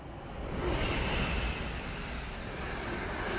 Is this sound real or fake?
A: real